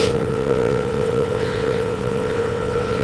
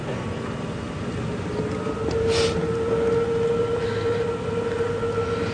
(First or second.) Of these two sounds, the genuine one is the second